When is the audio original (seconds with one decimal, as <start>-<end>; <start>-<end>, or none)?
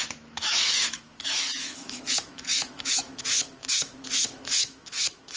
none